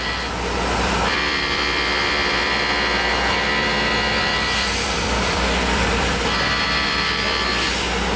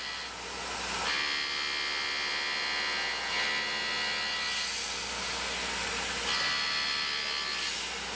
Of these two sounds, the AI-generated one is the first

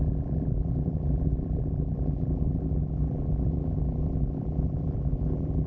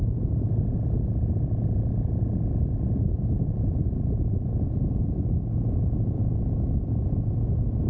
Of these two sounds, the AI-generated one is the first